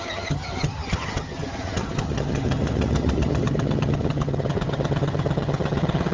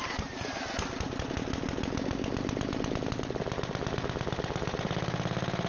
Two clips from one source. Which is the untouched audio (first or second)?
second